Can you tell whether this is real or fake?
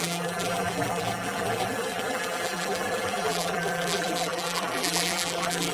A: fake